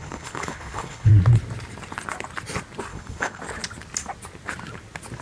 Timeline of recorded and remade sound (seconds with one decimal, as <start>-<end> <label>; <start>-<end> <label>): 0.0-1.1 remade; 1.1-2.9 recorded; 2.9-3.4 remade; 3.4-5.2 recorded